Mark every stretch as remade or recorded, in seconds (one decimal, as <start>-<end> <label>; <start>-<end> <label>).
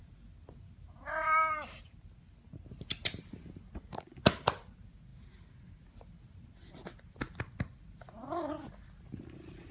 0.0-9.7 recorded